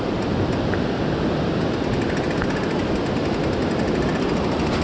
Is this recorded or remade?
recorded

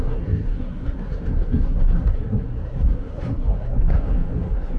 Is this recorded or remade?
remade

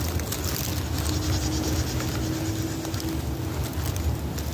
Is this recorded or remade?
recorded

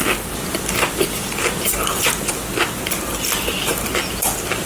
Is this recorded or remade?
recorded